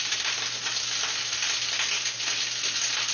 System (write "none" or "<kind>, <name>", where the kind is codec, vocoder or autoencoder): none